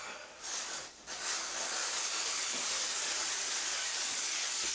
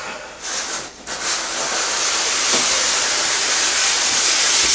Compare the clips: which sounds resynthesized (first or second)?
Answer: first